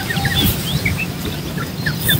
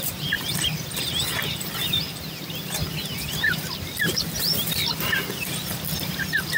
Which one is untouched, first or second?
first